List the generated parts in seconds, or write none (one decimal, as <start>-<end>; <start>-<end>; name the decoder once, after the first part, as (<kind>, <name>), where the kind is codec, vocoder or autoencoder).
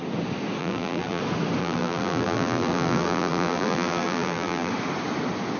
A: 0.6-1.2 (vocoder, BigVGAN v2); 1.6-4.7